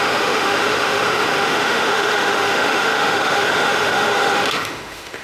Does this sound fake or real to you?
fake